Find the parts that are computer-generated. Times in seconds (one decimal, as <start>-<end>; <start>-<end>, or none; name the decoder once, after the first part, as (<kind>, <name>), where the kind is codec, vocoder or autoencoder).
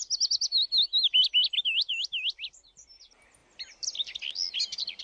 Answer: none